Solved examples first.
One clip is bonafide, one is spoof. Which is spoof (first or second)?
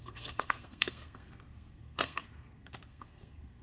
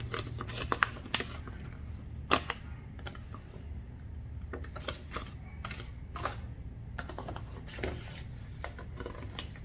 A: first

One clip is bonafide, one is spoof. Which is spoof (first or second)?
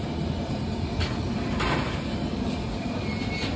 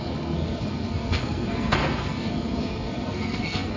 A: second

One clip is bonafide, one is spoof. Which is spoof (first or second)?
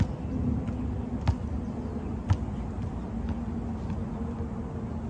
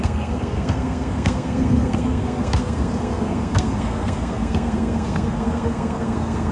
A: second